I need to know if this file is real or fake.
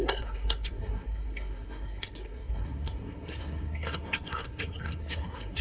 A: fake